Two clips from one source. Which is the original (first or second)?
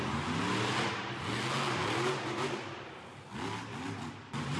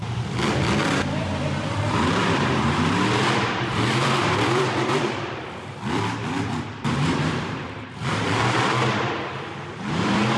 first